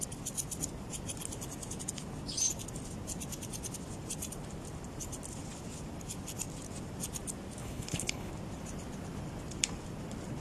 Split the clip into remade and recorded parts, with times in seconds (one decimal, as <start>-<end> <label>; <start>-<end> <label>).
0.0-7.6 recorded; 7.6-8.3 remade; 8.3-10.4 recorded